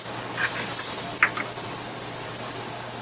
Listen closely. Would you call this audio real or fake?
real